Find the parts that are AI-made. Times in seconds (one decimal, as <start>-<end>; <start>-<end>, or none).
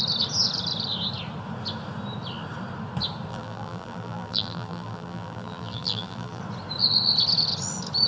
3.3-6.4